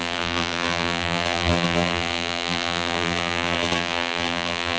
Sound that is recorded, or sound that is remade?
remade